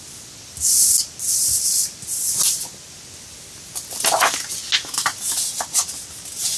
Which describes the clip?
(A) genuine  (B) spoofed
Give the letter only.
A